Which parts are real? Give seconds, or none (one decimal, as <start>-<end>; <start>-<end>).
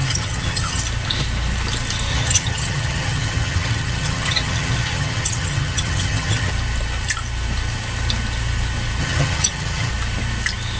0.8-2.1; 6.5-9.0; 9.9-10.8